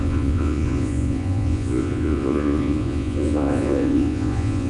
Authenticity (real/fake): fake